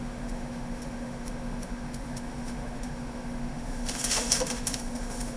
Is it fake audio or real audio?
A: fake